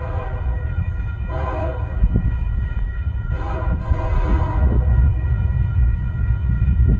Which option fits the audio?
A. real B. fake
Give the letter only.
B